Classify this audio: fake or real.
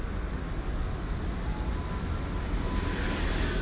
real